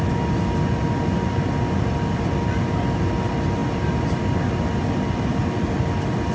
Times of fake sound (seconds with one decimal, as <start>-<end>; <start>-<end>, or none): none